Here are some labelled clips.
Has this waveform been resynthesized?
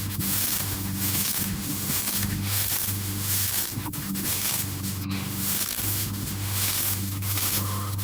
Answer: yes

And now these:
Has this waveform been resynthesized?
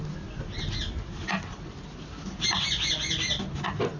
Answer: no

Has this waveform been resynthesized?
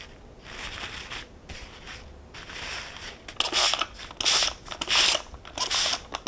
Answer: no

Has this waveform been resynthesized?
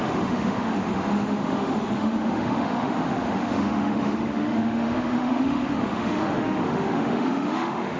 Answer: yes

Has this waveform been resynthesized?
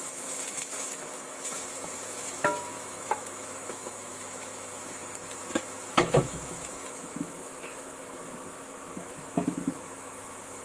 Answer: yes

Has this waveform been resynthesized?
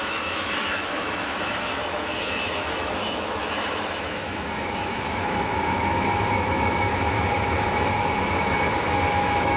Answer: yes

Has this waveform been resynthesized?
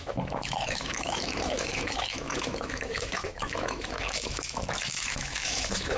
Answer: yes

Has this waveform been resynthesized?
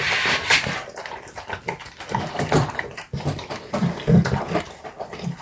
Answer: no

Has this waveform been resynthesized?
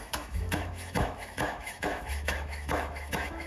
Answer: yes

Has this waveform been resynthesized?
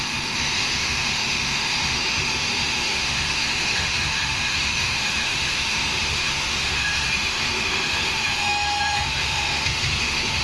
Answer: yes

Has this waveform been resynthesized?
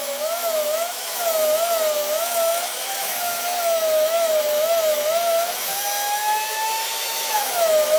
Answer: yes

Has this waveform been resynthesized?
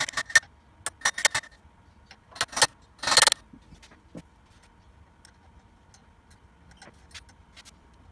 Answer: no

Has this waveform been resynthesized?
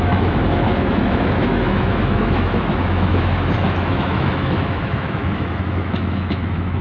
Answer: yes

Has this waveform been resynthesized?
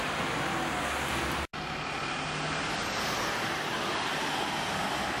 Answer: no